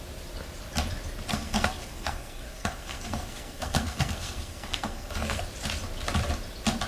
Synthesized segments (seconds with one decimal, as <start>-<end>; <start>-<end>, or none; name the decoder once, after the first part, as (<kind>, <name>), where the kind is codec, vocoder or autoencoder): 1.3-5.4 (codec, SNAC)